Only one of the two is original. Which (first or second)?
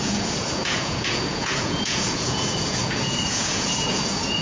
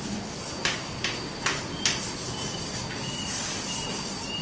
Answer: second